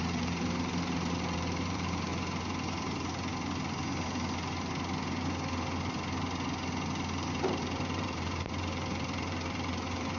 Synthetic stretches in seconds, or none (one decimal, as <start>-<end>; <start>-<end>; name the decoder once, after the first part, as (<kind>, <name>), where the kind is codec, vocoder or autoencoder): 0.0-2.1 (vocoder, BigVGAN v2); 7.3-10.2